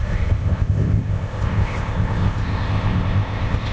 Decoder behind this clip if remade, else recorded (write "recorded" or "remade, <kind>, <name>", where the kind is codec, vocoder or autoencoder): remade, codec, ZipCodec